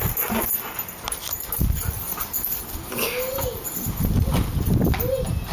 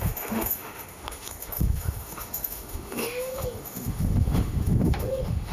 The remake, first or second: second